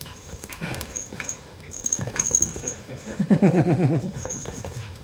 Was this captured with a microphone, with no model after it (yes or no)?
no